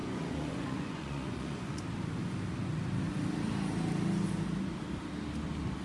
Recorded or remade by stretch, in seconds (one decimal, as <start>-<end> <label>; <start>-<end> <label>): 0.0-1.8 remade; 1.8-5.8 recorded